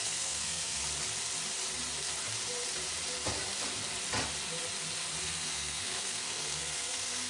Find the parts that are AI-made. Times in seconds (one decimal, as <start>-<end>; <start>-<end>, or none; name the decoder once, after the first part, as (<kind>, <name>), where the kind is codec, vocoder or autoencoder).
0.0-0.8 (codec, SNAC); 5.2-7.3